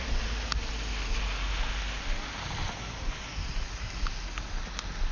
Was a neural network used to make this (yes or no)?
no